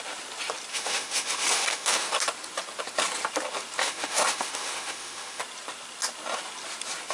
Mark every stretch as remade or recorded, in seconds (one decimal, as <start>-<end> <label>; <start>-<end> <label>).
0.0-0.7 recorded; 0.7-2.1 remade; 2.1-3.8 recorded; 3.8-5.4 remade; 5.4-7.1 recorded